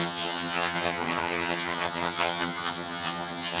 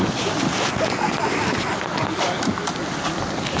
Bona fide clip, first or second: second